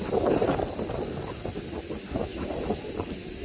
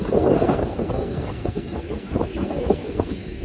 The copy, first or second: second